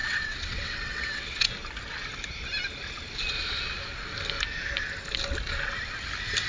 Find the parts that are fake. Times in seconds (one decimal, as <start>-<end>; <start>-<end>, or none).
0.0-1.5